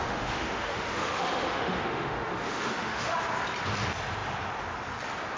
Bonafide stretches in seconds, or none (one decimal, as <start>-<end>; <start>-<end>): 3.2-5.4